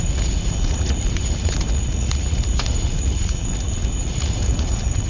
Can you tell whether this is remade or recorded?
remade